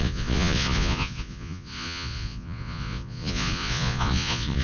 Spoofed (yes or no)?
yes